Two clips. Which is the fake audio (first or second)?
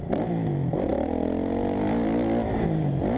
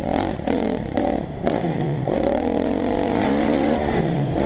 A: second